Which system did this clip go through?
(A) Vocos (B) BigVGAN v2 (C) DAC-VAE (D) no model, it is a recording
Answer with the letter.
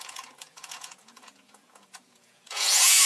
A